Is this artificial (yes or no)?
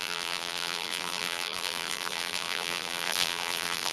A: yes